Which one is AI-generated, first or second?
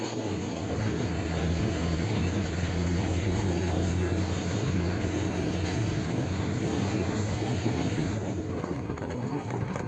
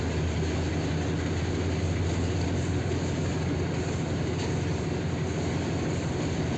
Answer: first